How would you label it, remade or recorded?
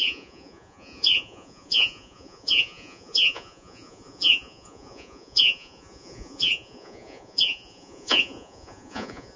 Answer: remade